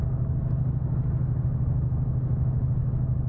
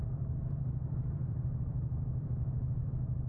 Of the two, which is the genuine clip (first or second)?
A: first